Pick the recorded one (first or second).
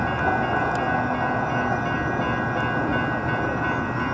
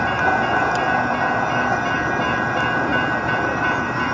first